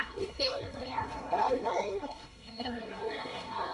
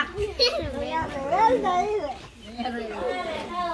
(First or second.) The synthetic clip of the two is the first